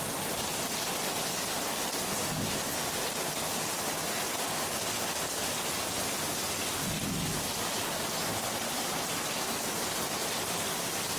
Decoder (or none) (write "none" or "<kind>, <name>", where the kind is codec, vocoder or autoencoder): none